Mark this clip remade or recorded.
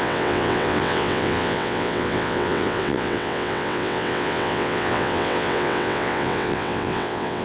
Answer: remade